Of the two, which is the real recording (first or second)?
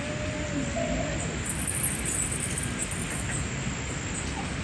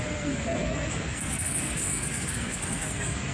first